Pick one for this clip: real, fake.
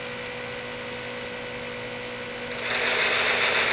real